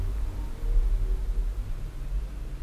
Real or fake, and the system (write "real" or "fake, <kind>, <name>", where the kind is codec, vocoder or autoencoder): real